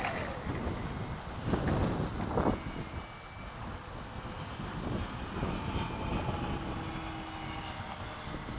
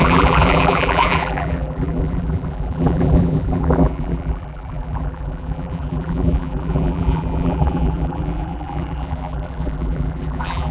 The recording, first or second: first